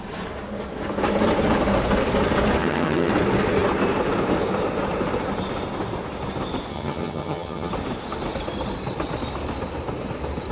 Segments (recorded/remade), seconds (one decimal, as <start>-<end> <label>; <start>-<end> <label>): 0.0-2.6 recorded; 2.6-3.1 remade; 3.1-6.7 recorded; 6.7-7.7 remade; 7.7-10.5 recorded